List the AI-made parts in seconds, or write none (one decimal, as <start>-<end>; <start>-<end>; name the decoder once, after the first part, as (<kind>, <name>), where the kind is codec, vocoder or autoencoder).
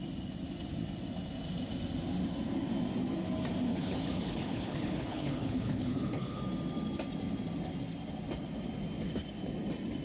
3.7-6.4 (codec, HILCodec)